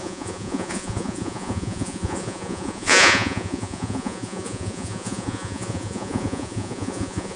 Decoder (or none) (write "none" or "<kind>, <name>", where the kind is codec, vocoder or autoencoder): vocoder, Vocos